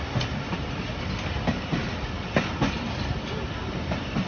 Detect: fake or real real